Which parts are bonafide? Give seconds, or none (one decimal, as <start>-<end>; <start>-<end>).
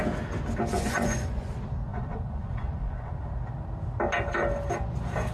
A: 0.0-0.7; 1.5-1.9; 3.1-5.3